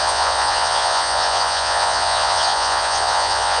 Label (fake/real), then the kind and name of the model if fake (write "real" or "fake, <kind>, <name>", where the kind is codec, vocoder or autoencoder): fake, vocoder, Vocos